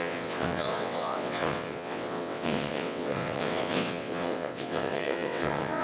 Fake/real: fake